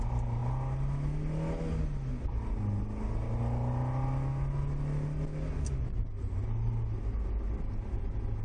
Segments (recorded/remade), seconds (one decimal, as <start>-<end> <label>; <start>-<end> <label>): 0.0-8.4 recorded